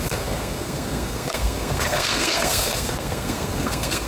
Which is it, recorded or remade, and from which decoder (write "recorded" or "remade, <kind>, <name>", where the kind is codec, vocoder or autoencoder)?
remade, codec, SNAC